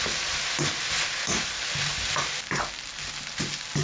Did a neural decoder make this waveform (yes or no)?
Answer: no